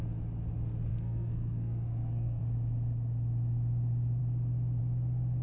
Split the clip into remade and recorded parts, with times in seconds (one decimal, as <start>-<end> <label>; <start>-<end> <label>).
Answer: 0.0-0.9 recorded; 0.9-2.4 remade; 2.4-5.4 recorded